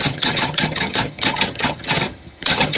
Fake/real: fake